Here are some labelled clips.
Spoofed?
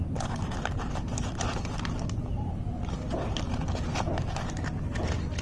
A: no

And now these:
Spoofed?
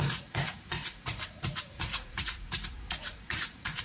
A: yes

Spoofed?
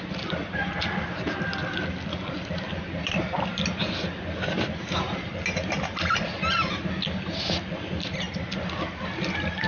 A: no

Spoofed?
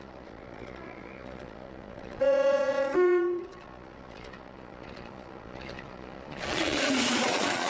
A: yes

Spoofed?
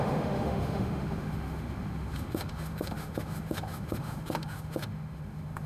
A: yes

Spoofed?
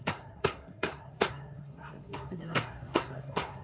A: yes